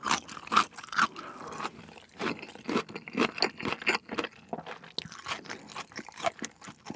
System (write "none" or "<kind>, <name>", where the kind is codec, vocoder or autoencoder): none